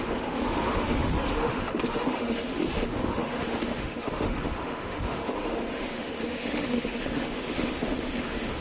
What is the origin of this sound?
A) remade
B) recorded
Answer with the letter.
A